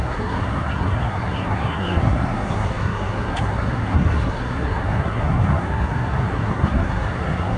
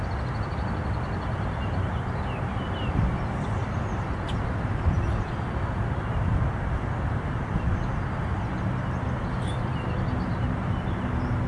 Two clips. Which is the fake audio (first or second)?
first